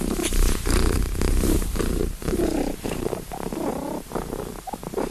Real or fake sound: fake